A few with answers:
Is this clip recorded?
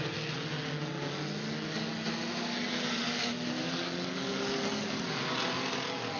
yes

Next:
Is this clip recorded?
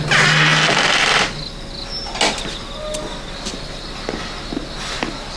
yes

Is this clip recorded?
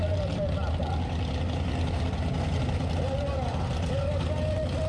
yes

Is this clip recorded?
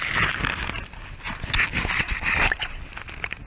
yes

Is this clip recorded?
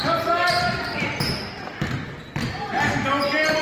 yes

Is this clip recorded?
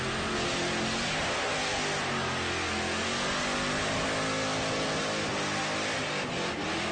yes